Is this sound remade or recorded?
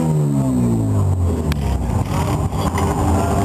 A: recorded